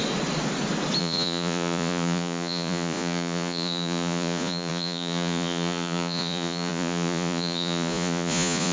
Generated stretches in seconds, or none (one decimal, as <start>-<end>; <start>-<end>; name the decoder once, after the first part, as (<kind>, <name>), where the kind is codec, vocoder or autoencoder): 1.0-8.7 (vocoder, Vocos)